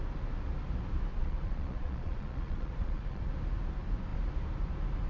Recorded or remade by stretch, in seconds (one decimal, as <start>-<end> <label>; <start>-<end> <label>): 0.0-1.1 recorded; 1.1-3.3 remade; 3.3-5.1 recorded